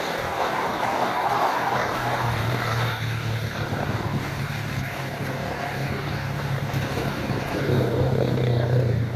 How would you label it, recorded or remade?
remade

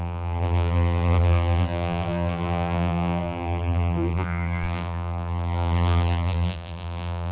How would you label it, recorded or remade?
remade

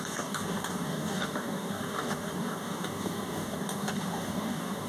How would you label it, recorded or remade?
remade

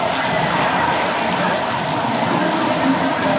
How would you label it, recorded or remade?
recorded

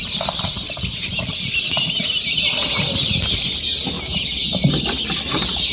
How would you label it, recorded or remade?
recorded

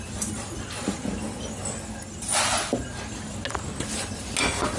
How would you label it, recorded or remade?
recorded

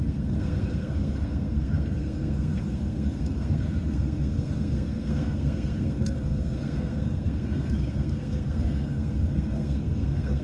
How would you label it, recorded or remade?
remade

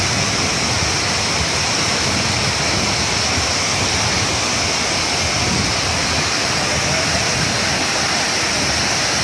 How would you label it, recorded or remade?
recorded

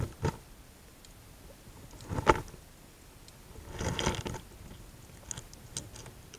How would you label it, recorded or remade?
recorded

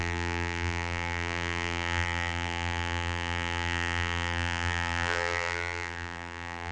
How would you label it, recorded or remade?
remade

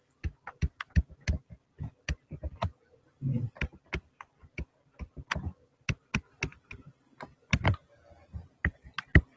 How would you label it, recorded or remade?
recorded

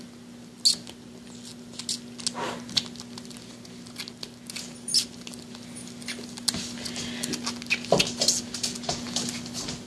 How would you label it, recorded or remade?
recorded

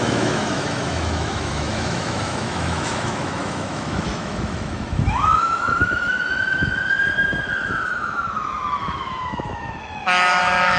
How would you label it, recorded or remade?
remade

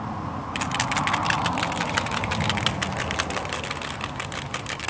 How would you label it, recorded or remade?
recorded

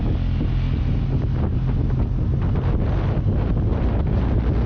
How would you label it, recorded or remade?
recorded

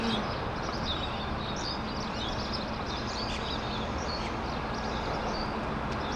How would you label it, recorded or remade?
recorded